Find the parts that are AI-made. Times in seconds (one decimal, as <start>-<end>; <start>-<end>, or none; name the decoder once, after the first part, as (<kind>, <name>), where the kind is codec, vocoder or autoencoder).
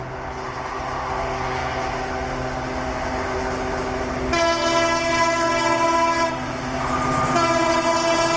none